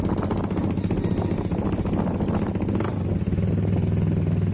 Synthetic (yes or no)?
no